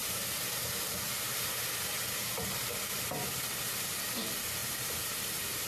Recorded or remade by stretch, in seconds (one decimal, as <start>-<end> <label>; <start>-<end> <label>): 0.0-3.4 remade; 3.4-4.6 recorded; 4.6-5.7 remade